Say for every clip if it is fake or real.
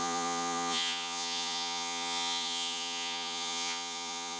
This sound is fake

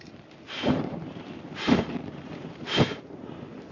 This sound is fake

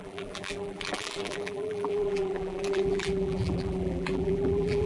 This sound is fake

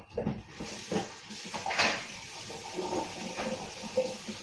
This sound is real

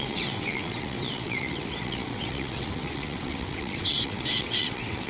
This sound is fake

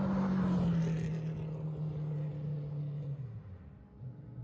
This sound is real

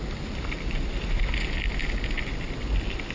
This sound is real